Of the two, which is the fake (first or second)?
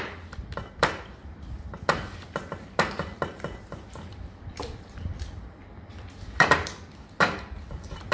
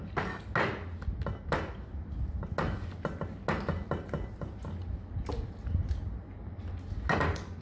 first